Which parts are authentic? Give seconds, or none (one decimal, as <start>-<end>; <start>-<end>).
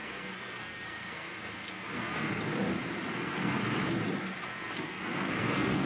2.5-3.1; 3.6-4.4